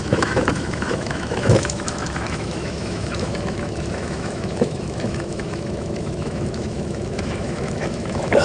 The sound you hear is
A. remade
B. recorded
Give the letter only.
A